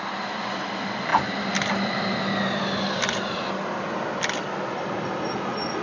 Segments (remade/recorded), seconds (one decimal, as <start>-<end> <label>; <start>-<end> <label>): 0.0-5.8 recorded